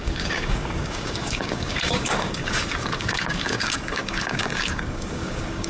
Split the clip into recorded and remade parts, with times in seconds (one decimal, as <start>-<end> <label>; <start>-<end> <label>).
0.0-5.7 remade